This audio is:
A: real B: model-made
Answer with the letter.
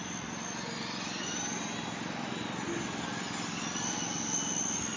B